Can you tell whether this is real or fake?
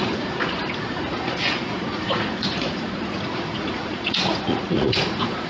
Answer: fake